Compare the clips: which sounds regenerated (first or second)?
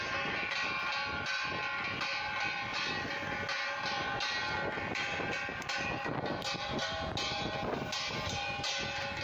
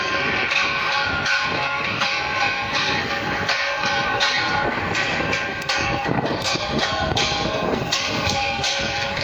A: second